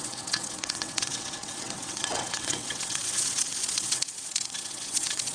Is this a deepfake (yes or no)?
yes